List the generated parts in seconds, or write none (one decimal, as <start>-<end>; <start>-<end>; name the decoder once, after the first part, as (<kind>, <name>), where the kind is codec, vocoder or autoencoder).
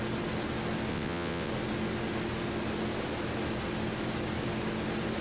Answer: 0.9-1.5 (vocoder, WaveNeXt)